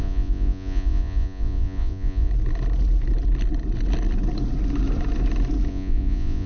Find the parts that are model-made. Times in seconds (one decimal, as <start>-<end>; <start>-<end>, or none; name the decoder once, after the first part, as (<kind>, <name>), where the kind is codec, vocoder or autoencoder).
0.0-2.3 (vocoder, Vocos); 5.7-6.5